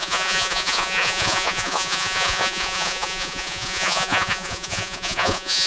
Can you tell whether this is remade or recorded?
remade